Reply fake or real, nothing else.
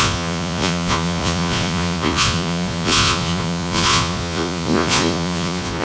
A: fake